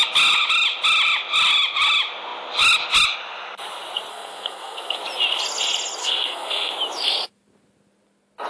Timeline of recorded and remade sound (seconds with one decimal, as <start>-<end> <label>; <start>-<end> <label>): 0.0-4.1 recorded; 4.1-5.0 remade; 5.0-6.0 recorded; 6.0-6.7 remade; 6.7-8.5 recorded